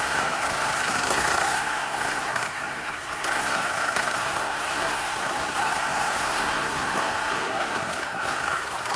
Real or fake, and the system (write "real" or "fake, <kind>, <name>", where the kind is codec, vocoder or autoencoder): fake, codec, SNAC